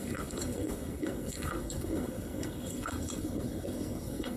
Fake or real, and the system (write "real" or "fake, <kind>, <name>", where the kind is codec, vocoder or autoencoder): fake, codec, SNAC